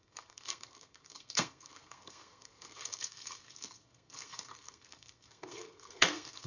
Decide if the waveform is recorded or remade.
remade